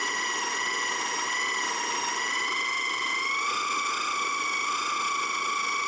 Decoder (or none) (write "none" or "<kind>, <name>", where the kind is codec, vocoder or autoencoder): none